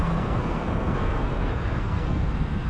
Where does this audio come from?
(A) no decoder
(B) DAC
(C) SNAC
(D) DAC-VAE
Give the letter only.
C